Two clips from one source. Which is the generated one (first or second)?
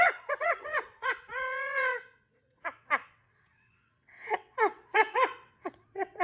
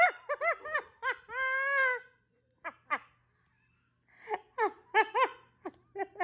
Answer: first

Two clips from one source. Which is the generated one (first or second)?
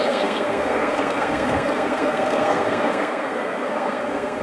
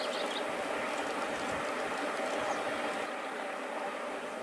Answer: first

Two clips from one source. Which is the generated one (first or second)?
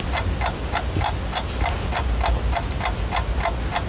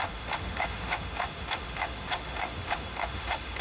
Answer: second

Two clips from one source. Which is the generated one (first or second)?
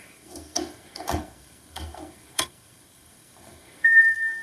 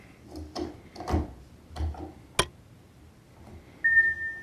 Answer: first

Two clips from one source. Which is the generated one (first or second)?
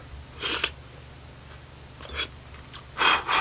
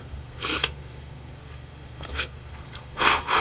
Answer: second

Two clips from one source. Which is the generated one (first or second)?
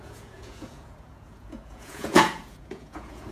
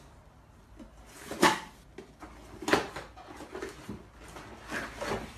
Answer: first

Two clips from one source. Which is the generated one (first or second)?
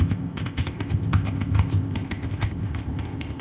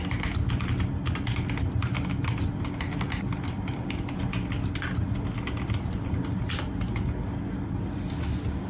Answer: first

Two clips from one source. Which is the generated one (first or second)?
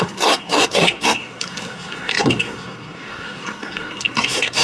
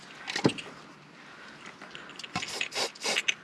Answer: first